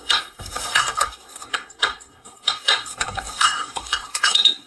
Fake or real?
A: fake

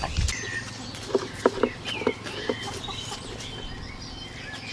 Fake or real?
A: real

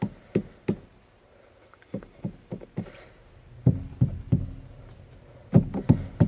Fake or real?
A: real